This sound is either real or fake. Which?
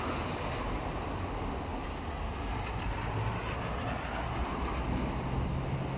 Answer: real